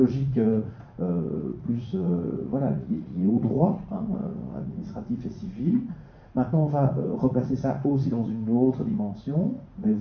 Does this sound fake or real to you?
fake